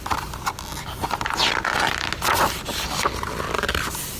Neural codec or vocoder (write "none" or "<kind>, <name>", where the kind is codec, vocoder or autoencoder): none